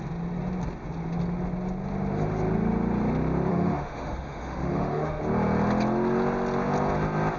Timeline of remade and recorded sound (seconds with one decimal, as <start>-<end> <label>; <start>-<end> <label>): 0.0-3.5 recorded; 3.5-5.2 remade; 5.2-7.4 recorded